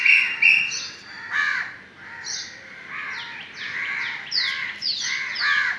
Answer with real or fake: real